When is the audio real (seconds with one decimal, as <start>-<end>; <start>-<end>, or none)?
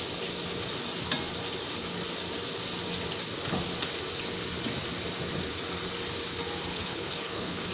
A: 0.0-6.7